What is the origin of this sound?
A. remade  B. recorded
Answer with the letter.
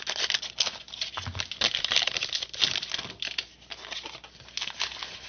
B